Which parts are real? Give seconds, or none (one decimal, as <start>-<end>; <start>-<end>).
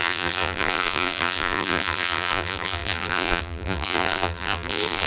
none